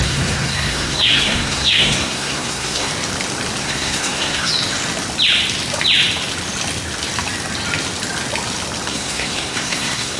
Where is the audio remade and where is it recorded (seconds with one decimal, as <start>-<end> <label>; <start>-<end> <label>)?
0.0-2.9 remade; 2.9-3.6 recorded; 3.6-4.5 remade; 4.5-8.9 recorded; 8.9-10.2 remade